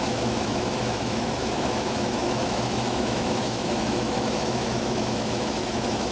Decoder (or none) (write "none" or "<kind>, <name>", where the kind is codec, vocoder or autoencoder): autoencoder, DAC-VAE